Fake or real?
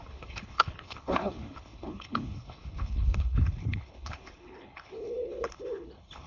fake